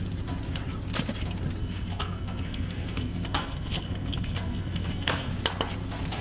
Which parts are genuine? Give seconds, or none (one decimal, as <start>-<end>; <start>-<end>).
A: 0.0-1.6; 5.3-6.2